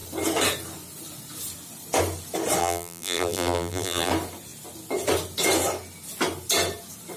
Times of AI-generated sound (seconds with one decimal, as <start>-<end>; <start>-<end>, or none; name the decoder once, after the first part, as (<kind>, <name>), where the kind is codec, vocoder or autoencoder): 2.6-4.1 (vocoder, BigVGAN v2)